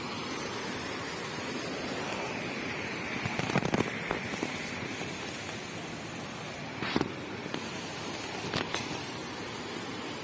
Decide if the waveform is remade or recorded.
recorded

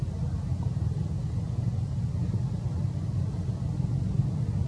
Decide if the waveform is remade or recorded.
recorded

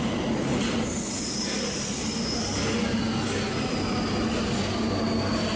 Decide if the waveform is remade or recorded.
recorded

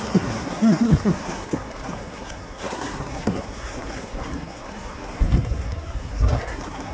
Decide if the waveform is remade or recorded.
remade